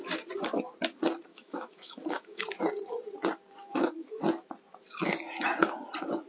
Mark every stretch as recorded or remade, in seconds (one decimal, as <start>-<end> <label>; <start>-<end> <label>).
0.0-1.3 recorded; 1.3-2.4 remade; 2.4-3.6 recorded; 3.6-4.2 remade; 4.2-6.3 recorded